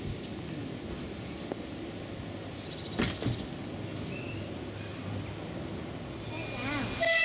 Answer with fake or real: real